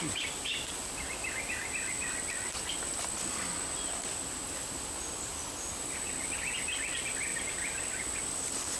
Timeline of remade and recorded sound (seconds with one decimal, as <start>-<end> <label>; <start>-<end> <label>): 0.0-7.3 recorded; 7.3-7.8 remade; 7.8-8.8 recorded